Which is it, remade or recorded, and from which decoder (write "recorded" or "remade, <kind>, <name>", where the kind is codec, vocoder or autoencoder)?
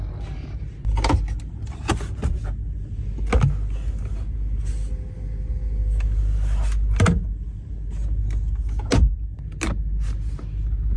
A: recorded